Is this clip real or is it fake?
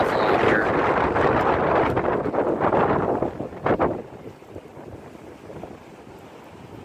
real